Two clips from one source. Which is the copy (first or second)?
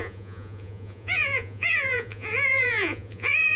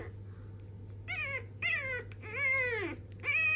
first